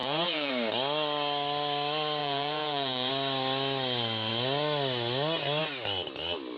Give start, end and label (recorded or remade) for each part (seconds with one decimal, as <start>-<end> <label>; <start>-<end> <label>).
0.0-0.5 remade; 0.5-2.2 recorded; 2.2-3.1 remade; 3.1-6.6 recorded